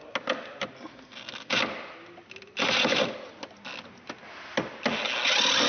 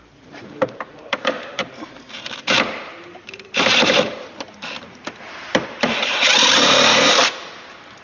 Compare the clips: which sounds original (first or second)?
first